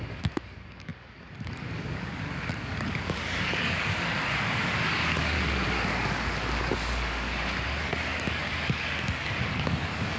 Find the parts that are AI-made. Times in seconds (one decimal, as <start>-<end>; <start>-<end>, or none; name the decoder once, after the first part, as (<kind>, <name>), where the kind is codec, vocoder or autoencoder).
0.0-10.2 (codec, DAC)